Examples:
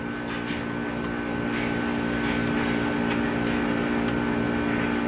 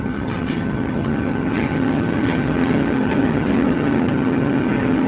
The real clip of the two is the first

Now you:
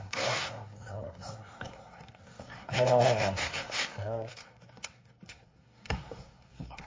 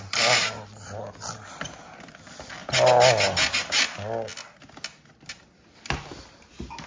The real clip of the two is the second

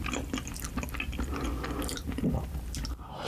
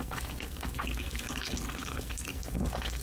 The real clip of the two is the first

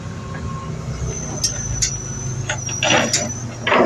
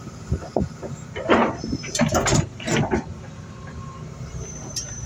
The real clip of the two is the first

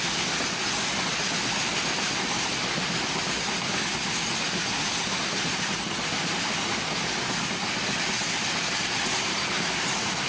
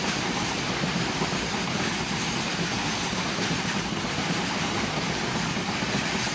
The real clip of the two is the first